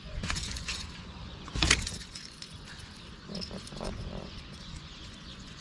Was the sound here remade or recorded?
remade